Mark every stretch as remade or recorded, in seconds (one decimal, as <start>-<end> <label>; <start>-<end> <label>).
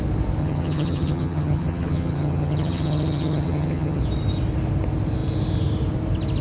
0.0-0.4 recorded; 0.4-4.0 remade; 4.0-6.4 recorded